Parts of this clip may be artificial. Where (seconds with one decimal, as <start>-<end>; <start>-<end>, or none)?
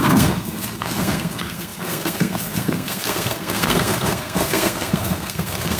0.0-5.8